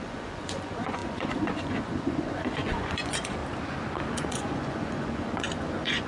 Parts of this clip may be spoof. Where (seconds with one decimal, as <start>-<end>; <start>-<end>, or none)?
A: 0.0-3.4; 4.1-6.1